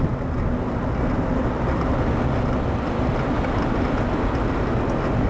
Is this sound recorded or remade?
recorded